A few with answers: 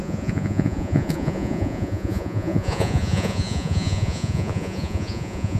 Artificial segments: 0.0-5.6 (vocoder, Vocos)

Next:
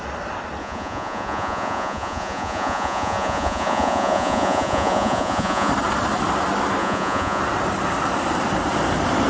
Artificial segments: 0.6-5.7 (vocoder, Vocos); 6.8-7.4